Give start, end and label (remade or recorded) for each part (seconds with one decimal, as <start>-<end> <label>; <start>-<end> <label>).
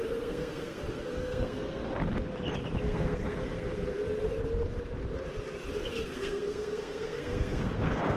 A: 0.0-1.8 remade; 1.8-2.8 recorded; 2.8-4.0 remade; 4.0-5.9 recorded; 5.9-8.2 remade